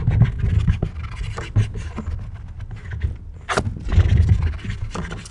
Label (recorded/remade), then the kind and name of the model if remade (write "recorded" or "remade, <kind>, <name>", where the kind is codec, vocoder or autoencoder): recorded